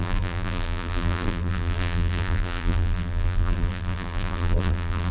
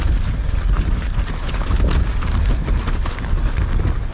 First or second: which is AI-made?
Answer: first